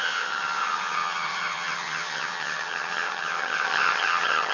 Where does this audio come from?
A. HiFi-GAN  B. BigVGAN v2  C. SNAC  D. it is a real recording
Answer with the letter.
A